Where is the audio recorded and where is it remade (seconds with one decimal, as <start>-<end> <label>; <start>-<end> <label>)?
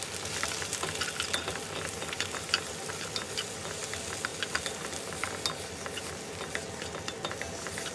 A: 0.0-7.9 recorded